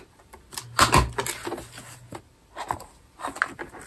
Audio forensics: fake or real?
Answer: real